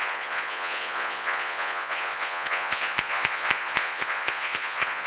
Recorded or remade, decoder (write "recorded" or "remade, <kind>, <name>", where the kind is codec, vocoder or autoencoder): remade, vocoder, Vocos